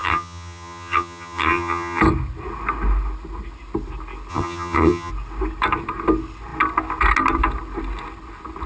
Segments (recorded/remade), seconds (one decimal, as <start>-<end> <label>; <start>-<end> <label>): 0.0-2.0 remade; 2.0-4.3 recorded; 4.3-5.1 remade; 5.1-8.7 recorded